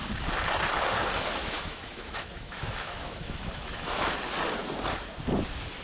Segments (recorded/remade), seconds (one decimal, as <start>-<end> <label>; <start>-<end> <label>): 0.0-1.4 recorded; 1.4-4.1 remade; 4.1-5.8 recorded